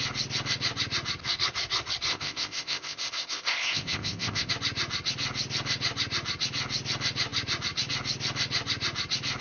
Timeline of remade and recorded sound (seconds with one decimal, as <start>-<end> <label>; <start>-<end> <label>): 0.0-2.1 recorded; 2.1-4.5 remade; 4.5-9.4 recorded